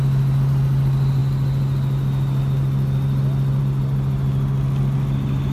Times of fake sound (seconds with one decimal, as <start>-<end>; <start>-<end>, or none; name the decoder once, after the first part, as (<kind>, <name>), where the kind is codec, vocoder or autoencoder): none

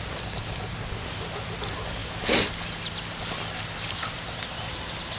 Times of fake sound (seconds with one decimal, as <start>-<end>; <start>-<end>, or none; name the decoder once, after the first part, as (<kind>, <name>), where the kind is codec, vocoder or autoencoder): none